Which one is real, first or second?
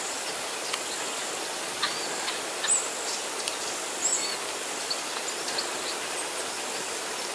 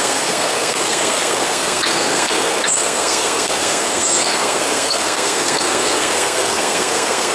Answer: first